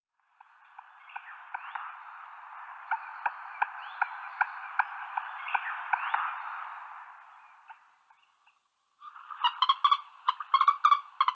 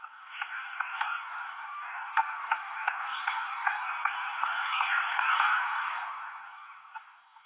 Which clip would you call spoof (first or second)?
second